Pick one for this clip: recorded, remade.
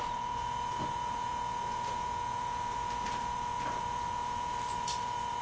remade